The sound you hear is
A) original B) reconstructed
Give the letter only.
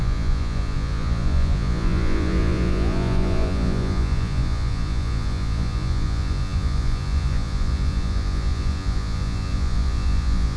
B